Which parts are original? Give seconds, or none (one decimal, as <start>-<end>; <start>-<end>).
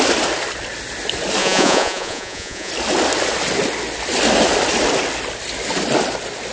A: 0.0-1.4; 2.7-6.5